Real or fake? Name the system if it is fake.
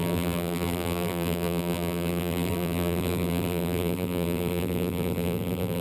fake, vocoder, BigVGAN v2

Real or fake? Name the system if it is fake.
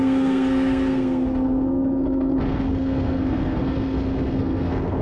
fake, codec, SNAC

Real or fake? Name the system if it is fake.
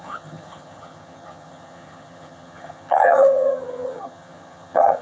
fake, vocoder, HiFi-GAN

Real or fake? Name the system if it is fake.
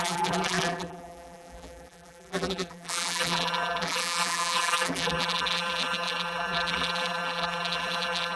fake, vocoder, BigVGAN v2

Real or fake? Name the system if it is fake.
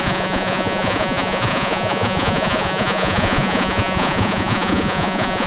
fake, vocoder, Vocos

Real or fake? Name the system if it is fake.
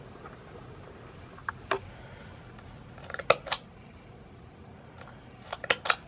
real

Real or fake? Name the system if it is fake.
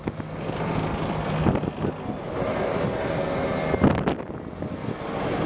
real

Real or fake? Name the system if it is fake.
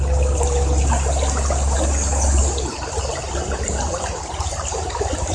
real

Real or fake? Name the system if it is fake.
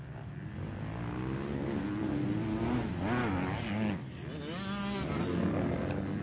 real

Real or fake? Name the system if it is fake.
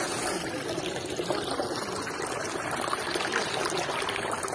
real